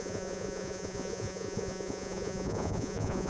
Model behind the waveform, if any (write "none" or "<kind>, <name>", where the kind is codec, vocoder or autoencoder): vocoder, Vocos